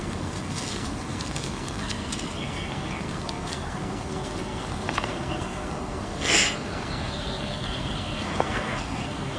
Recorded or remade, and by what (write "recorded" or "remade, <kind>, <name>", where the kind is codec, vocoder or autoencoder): remade, codec, SNAC